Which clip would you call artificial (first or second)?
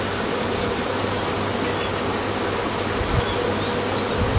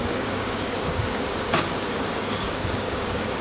second